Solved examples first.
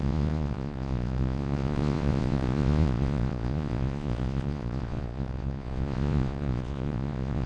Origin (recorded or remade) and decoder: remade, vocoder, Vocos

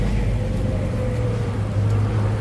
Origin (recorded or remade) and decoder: recorded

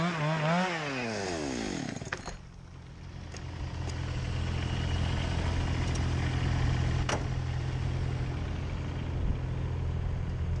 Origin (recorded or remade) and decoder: recorded